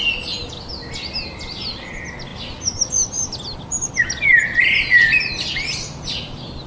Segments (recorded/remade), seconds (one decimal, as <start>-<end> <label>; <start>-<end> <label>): 0.0-6.7 recorded